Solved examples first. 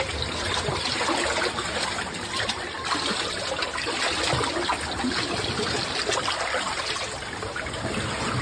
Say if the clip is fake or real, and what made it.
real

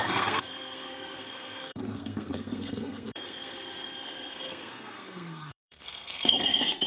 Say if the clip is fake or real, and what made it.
fake, codec, SNAC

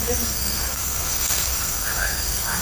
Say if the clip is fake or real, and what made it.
fake, codec, SNAC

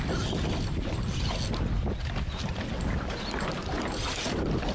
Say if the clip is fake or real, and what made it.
real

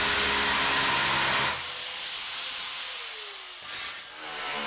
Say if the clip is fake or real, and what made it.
real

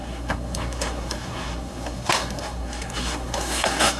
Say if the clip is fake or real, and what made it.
fake, codec, SNAC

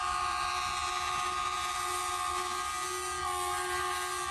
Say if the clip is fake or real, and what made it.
real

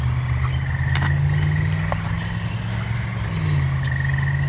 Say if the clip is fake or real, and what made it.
real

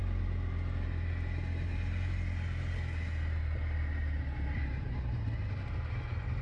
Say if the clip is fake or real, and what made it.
real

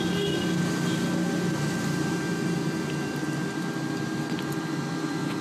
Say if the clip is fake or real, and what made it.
real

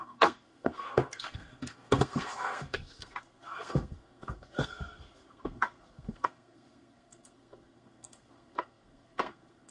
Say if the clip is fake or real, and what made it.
fake, codec, SNAC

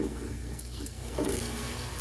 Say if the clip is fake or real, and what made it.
fake, codec, SNAC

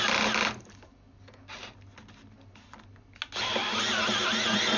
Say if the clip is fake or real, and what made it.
real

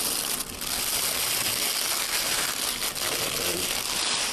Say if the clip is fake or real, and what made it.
real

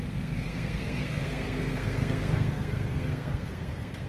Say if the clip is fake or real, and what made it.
fake, codec, SNAC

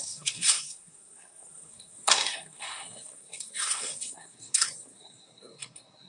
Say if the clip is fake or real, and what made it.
fake, codec, SNAC